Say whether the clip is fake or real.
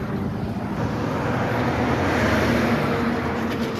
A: real